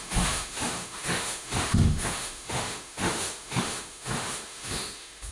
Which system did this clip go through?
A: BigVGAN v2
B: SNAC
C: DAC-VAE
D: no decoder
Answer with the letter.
C